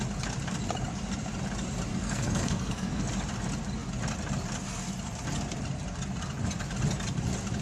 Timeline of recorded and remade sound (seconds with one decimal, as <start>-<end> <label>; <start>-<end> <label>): 0.0-1.9 recorded; 1.9-3.1 remade; 3.1-7.6 recorded